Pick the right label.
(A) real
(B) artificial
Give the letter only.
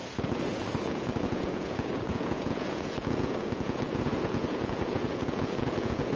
B